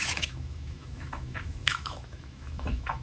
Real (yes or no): no